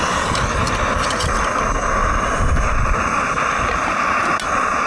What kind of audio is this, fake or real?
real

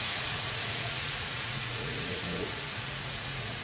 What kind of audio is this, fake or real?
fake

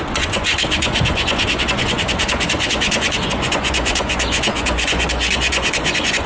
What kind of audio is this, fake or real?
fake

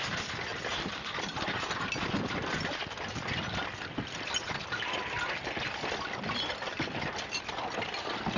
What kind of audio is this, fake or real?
real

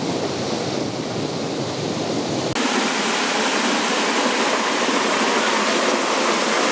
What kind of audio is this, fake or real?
real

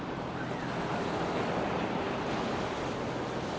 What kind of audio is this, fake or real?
real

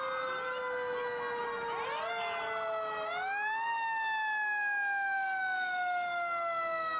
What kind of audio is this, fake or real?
real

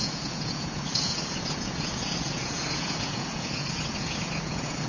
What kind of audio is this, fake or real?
fake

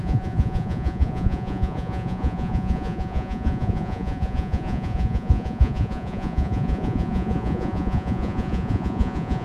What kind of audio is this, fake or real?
fake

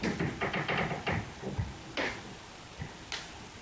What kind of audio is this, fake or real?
real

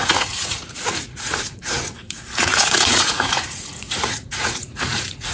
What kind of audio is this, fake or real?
fake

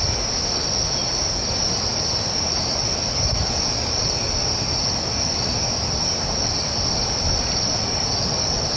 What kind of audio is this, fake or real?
real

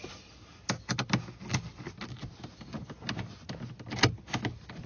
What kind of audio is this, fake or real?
real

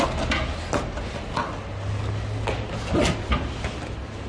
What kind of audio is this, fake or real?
real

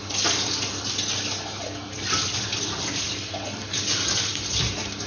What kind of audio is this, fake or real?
real